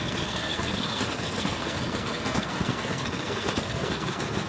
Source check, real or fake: fake